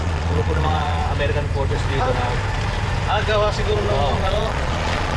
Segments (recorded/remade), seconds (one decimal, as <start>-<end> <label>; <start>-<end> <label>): 0.0-1.0 remade; 1.0-4.1 recorded; 4.1-5.2 remade